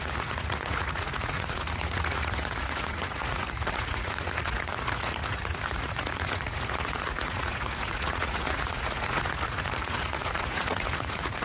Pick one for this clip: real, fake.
fake